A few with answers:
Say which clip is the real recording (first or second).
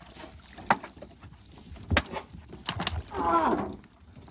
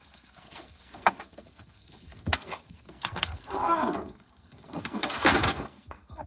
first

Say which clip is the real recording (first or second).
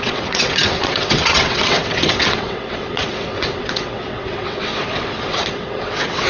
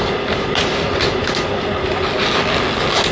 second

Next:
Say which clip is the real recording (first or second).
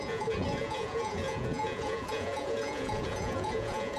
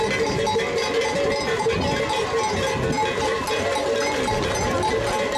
second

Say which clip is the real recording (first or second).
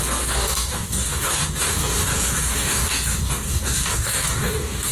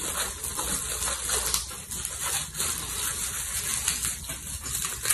second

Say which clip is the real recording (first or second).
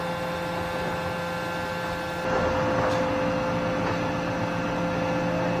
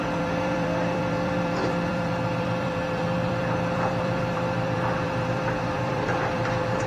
first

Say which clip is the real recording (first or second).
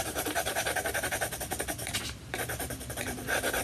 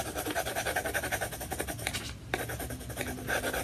second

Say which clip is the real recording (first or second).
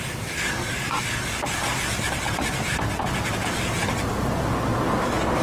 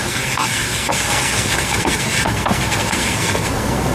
first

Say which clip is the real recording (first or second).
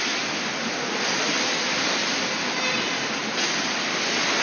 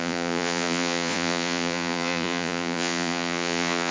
first